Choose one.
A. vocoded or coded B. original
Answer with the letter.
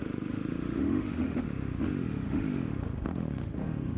A